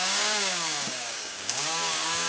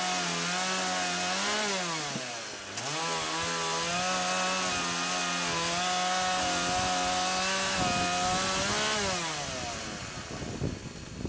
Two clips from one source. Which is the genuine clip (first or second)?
second